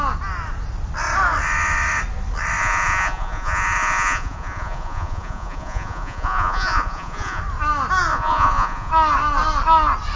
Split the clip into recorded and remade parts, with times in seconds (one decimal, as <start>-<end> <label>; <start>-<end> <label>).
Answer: 0.0-2.6 recorded; 2.6-7.4 remade; 7.4-8.1 recorded; 8.1-8.9 remade; 8.9-10.2 recorded